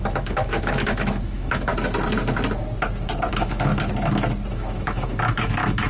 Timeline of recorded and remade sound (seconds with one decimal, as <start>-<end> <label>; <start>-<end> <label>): 0.0-1.7 remade; 1.7-3.3 recorded; 3.3-3.7 remade; 3.7-4.5 recorded; 4.5-5.9 remade